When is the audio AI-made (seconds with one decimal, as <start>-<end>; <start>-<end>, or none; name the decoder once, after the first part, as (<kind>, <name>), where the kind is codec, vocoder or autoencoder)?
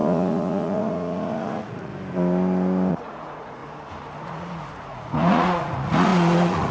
0.0-1.9 (vocoder, Vocos); 2.9-3.6; 4.2-6.7